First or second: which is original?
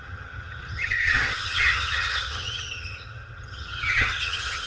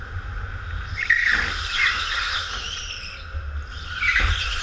second